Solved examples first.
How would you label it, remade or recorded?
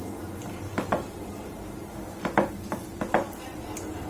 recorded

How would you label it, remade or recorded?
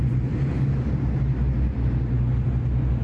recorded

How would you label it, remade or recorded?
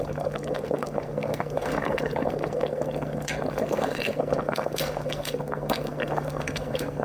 remade